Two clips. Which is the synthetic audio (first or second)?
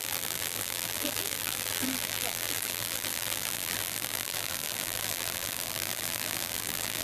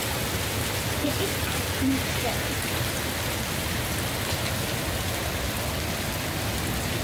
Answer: first